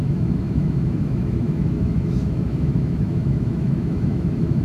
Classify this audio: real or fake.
fake